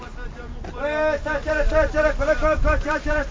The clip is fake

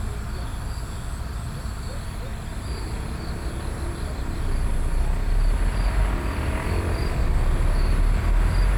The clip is real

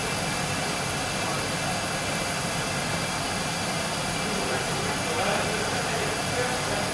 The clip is real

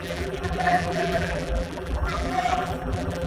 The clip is fake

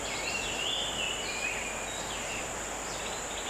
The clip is real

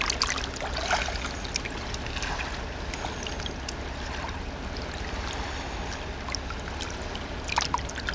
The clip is real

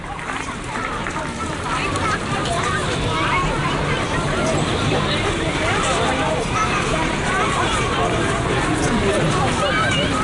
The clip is fake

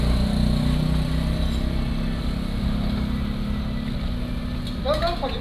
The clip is real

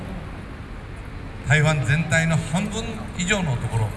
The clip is real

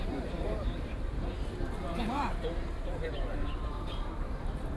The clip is fake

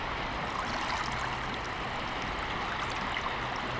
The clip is real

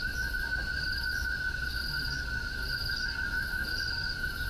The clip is real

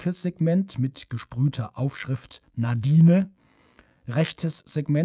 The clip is fake